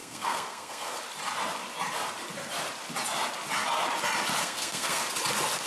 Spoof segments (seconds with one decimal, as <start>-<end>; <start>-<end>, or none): 0.0-1.0; 4.4-5.1